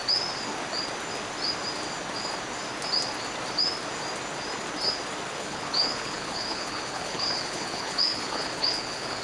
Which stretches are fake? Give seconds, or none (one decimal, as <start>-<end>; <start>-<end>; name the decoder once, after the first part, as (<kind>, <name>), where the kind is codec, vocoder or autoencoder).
5.3-9.2 (codec, HILCodec)